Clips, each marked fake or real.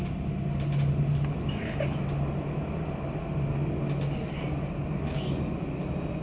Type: real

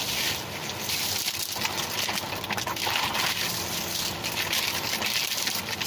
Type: real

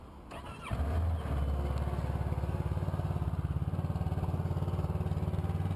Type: real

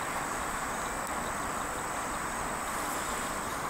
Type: real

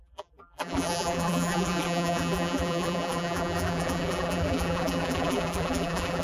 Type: fake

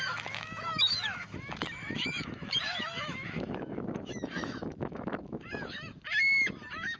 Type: fake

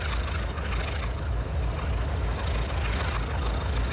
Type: real